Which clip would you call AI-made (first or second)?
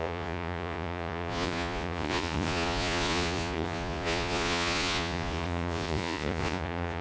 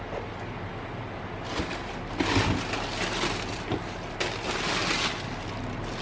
first